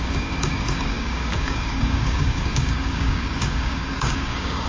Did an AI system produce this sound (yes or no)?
yes